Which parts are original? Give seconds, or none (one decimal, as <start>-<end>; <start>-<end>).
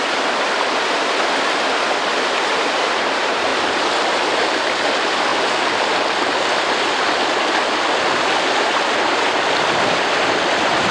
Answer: 5.3-9.8